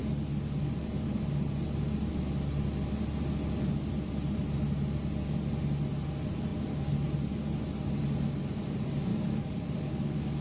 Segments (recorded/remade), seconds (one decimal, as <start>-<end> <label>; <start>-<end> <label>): 0.0-9.1 recorded; 9.1-10.4 remade